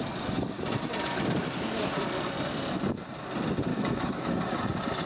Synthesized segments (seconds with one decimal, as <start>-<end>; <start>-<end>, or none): 3.7-4.3

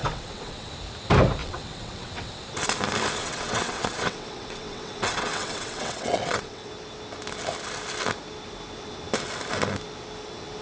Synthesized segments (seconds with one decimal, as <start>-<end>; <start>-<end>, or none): 0.0-0.7; 1.4-2.4; 3.2-6.7